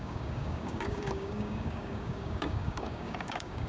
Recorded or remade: remade